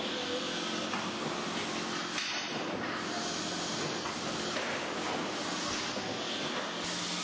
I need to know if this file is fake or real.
real